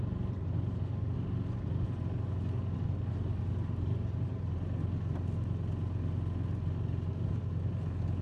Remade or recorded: recorded